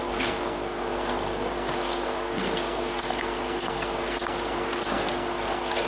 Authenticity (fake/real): fake